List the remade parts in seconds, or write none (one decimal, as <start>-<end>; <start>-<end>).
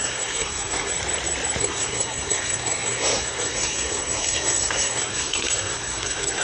0.0-0.9; 1.6-6.4